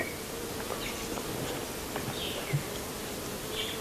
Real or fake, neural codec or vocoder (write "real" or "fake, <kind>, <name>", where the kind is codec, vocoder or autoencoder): real